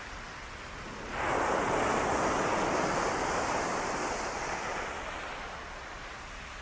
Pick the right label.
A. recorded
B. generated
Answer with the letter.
A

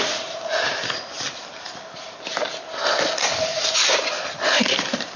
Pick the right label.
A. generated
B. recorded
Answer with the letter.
B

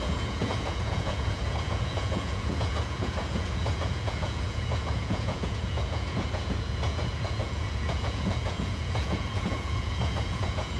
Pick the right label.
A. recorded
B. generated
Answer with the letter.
B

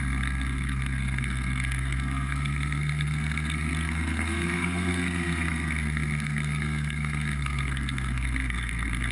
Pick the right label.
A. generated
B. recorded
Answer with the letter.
A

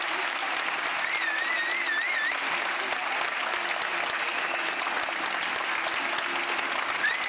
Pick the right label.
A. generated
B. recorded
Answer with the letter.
B